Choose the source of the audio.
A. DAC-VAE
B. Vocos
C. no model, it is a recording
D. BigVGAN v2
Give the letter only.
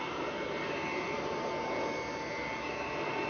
C